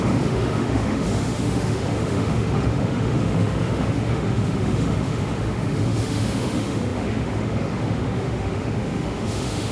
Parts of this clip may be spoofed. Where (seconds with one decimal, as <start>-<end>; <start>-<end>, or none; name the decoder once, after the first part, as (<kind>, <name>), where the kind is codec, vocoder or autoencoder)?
0.0-9.7 (autoencoder, DAC-VAE)